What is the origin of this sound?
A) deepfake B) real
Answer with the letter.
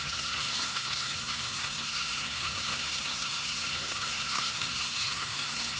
A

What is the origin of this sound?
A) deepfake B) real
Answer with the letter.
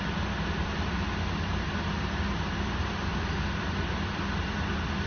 B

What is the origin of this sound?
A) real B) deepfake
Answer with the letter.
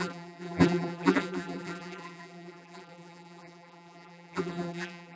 B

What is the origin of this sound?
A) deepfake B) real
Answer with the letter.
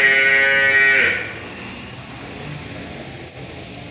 B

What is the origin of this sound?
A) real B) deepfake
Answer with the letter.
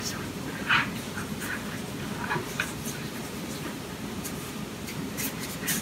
B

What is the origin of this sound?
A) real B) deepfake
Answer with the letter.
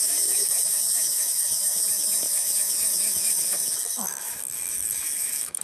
B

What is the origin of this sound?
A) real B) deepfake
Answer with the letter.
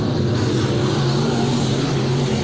A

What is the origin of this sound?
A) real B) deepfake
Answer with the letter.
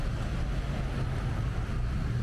A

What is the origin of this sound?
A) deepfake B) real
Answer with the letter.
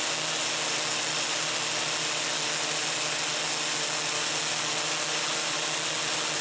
B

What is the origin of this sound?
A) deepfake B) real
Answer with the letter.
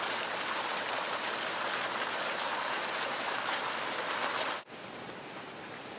B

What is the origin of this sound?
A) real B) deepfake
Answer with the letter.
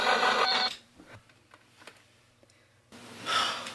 B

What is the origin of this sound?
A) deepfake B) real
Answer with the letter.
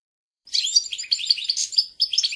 A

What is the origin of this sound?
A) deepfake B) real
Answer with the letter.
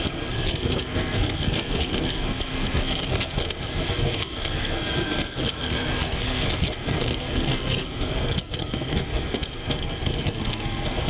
A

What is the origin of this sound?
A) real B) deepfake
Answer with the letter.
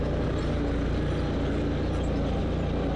A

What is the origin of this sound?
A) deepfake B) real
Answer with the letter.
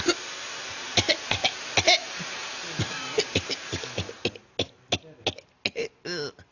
B